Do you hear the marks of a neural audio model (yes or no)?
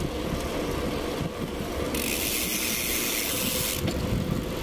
no